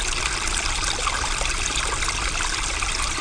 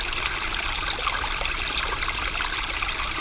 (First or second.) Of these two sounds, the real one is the second